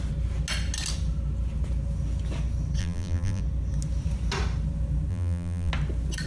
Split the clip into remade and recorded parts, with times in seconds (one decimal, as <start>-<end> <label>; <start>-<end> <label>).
0.0-2.8 recorded; 2.8-3.4 remade; 3.4-5.1 recorded; 5.1-5.7 remade; 5.7-6.3 recorded